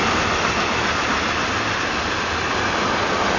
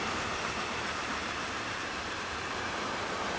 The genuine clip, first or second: first